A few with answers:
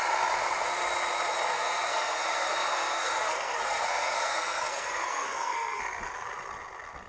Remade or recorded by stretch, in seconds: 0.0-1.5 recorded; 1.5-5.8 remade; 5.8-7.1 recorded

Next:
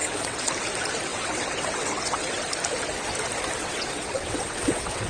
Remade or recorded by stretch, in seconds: 0.0-0.5 remade; 0.5-1.1 recorded; 1.1-2.4 remade; 2.4-3.6 recorded; 3.6-5.1 remade